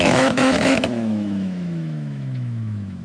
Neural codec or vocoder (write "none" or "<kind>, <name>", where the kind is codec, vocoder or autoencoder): autoencoder, DAC-VAE